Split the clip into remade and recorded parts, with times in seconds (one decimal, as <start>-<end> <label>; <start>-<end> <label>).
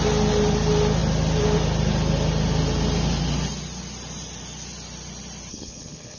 0.0-5.5 recorded; 5.5-6.2 remade